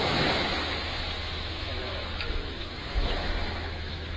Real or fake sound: fake